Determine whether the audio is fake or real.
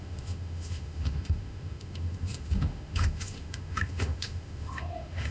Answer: fake